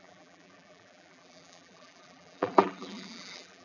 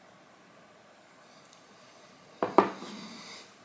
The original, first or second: second